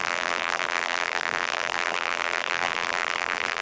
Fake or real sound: fake